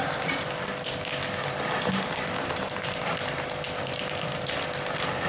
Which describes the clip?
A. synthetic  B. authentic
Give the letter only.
B